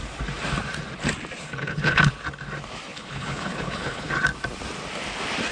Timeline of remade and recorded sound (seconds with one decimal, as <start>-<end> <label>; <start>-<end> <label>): 0.0-1.4 recorded; 1.4-2.1 remade; 2.1-2.9 recorded; 2.9-4.1 remade; 4.1-5.5 recorded